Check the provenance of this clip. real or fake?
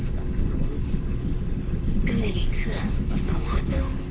fake